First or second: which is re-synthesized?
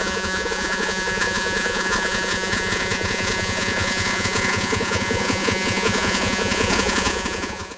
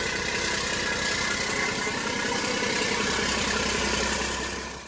first